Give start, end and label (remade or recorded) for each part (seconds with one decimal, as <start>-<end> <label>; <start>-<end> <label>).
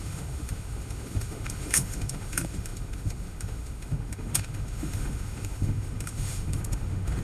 0.0-7.2 remade